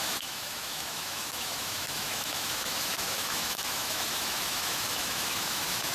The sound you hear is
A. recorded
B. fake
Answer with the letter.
B